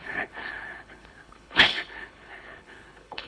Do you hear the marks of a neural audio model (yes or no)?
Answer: yes